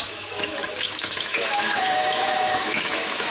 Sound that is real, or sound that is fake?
fake